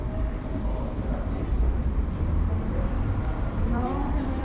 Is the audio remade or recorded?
remade